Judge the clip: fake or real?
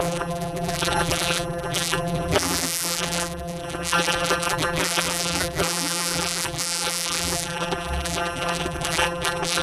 fake